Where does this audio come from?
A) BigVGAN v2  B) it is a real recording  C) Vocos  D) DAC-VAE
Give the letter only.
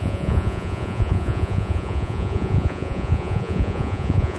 C